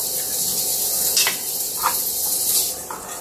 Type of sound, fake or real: real